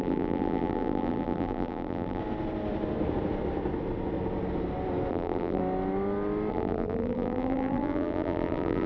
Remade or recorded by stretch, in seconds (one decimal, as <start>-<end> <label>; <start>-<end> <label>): 0.0-2.2 remade; 2.2-5.1 recorded; 5.1-5.6 remade; 5.6-6.5 recorded; 6.5-8.9 remade